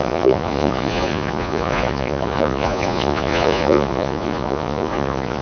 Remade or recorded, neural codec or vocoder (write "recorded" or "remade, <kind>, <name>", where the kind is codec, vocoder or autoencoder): remade, vocoder, Vocos